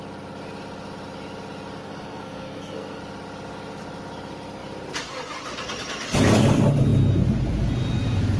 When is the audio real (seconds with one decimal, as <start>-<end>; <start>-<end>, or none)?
0.0-1.8; 3.0-8.4